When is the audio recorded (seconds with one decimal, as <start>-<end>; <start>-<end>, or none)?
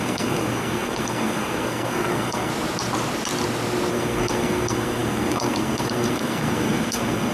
2.5-3.9